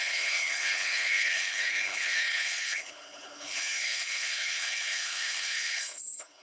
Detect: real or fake fake